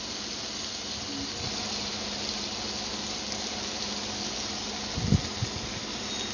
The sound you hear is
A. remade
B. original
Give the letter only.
B